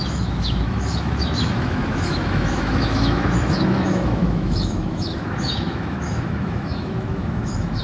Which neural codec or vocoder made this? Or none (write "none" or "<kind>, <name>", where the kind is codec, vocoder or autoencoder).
autoencoder, DAC-VAE